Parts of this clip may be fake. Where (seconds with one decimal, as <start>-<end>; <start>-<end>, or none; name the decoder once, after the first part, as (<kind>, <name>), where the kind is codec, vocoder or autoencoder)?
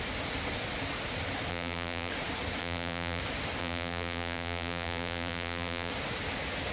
1.5-2.1 (vocoder, BigVGAN v2); 2.6-3.2; 3.6-5.9